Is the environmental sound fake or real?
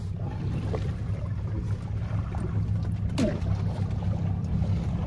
real